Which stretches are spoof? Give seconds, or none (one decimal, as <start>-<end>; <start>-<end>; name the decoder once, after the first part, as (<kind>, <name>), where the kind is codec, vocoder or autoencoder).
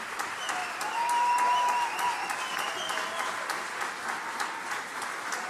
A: none